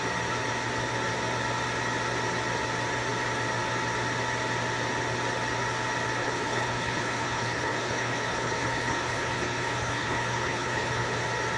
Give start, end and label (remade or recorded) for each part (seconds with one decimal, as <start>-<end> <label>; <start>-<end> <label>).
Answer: 0.0-6.2 recorded; 6.2-11.2 remade; 11.2-11.6 recorded